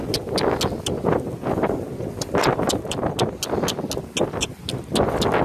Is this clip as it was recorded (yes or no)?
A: yes